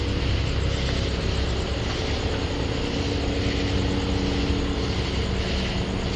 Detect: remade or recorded recorded